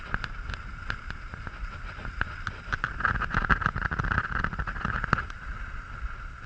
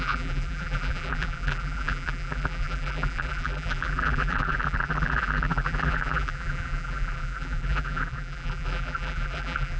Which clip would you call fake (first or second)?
second